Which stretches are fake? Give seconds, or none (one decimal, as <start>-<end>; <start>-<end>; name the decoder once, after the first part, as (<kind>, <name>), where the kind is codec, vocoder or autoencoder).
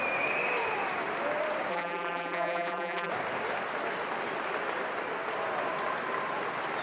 1.7-3.1 (vocoder, BigVGAN v2)